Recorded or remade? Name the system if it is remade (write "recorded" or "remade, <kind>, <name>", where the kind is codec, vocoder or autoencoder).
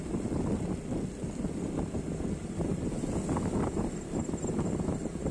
recorded